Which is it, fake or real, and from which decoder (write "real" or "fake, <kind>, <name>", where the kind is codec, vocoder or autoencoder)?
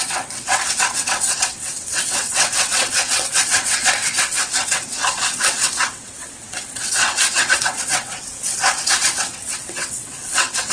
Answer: fake, vocoder, WaveNeXt